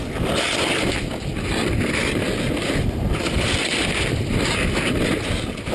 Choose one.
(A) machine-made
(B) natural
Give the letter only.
B